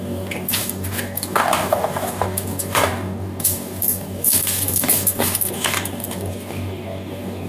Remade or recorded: remade